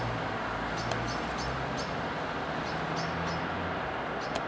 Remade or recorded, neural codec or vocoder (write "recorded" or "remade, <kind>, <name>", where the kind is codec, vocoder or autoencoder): recorded